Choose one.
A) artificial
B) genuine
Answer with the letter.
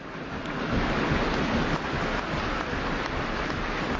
B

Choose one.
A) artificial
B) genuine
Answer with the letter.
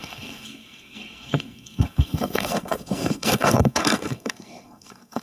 A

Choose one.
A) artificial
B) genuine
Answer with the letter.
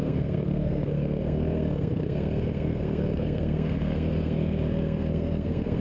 A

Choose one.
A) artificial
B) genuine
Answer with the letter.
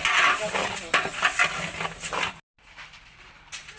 B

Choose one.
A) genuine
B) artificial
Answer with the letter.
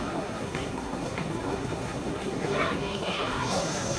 B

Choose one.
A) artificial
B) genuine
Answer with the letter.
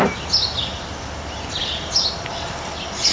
B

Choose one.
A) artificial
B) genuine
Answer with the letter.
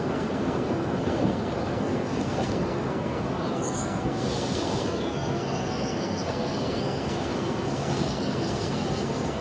A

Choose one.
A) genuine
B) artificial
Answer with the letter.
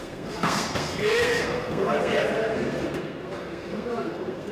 B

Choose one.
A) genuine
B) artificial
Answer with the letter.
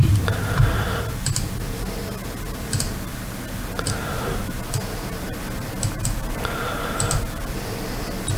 A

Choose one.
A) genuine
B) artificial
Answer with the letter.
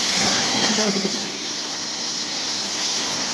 B